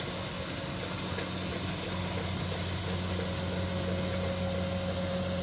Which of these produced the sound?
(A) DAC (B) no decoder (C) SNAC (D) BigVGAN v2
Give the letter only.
B